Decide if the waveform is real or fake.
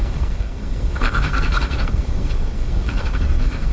fake